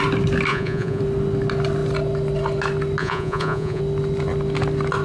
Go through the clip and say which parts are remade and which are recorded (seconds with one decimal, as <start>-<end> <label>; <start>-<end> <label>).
0.0-0.5 recorded; 0.5-1.0 remade; 1.0-3.0 recorded; 3.0-3.8 remade; 3.8-5.0 recorded